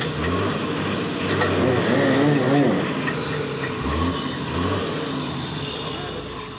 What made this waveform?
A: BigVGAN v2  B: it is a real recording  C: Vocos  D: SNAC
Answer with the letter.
B